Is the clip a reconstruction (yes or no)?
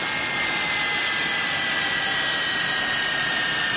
no